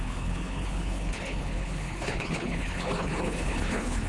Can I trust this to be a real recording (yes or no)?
no